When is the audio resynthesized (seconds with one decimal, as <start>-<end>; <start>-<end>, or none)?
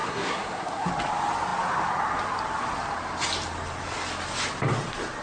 0.0-0.9